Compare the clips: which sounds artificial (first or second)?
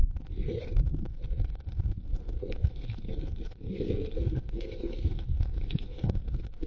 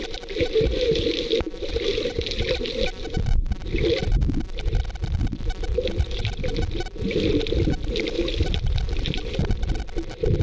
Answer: first